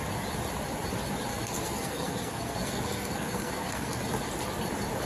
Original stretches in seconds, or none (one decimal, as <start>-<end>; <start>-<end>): 0.0-1.3; 4.0-5.1